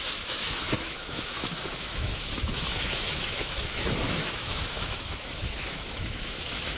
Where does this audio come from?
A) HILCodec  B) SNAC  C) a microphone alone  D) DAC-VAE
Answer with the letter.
D